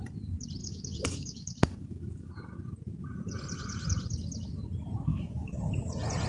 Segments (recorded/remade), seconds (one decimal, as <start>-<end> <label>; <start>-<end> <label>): 0.0-0.6 recorded; 0.6-2.3 remade; 2.3-5.1 recorded; 5.1-5.6 remade; 5.6-6.3 recorded